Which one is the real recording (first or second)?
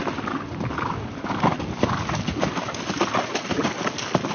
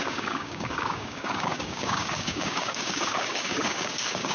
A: first